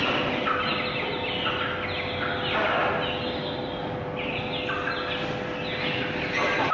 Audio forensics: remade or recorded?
recorded